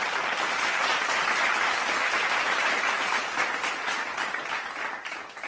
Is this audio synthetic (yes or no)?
no